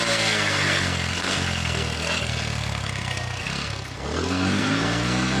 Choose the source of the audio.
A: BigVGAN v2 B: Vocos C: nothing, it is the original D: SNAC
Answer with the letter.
D